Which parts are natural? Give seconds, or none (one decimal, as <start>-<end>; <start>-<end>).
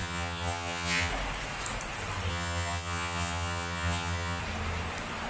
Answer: 1.1-2.3; 4.4-5.3